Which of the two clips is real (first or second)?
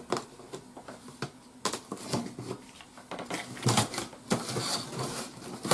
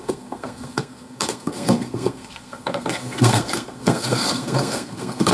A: first